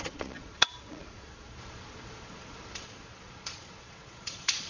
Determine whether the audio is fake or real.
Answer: fake